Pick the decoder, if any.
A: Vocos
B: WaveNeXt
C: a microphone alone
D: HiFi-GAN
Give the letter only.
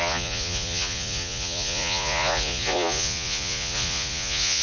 A